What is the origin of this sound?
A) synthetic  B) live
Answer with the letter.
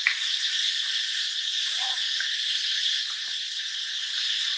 B